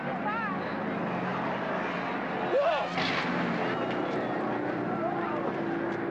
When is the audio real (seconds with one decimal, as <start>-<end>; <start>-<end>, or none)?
0.0-6.1

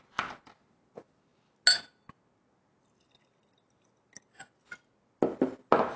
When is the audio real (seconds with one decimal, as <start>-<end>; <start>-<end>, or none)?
0.0-6.0

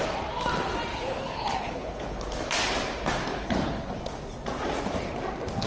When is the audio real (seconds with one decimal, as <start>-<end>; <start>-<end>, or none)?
0.0-0.9; 2.2-3.3; 4.0-5.7

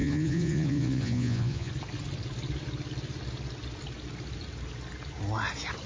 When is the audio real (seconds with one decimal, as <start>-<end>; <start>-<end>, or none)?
1.7-5.9

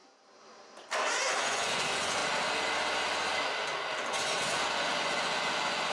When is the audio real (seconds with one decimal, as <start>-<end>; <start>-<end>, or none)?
0.0-1.4; 2.2-4.1

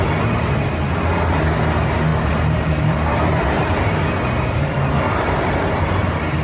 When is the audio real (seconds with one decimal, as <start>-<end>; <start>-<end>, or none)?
0.0-2.1; 5.4-6.4

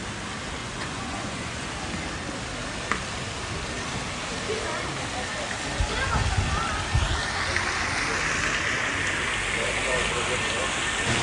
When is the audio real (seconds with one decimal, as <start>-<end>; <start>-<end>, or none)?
0.0-0.6; 1.7-11.2